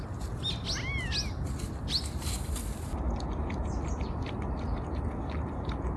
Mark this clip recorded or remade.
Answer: recorded